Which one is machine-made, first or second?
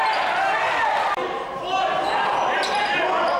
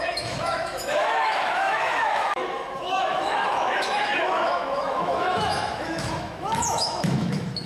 second